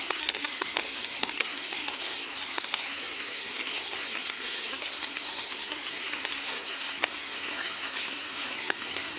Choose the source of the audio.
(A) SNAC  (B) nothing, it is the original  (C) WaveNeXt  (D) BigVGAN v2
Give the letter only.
A